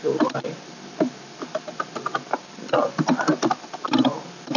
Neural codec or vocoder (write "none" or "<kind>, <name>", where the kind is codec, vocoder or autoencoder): none